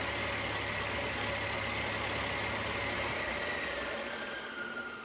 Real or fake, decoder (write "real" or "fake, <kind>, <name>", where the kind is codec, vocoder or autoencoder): real